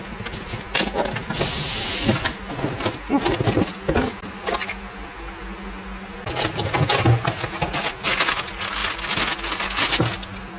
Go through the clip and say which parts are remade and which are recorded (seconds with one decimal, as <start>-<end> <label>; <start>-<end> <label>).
0.0-10.6 recorded